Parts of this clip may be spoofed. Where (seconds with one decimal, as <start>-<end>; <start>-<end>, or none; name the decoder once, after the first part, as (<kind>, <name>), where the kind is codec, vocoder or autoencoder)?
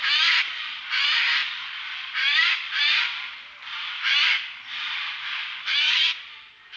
0.0-6.8 (vocoder, BigVGAN v2)